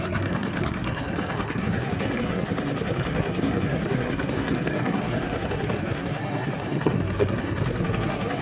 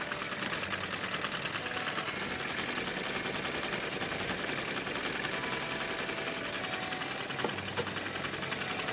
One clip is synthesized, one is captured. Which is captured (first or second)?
second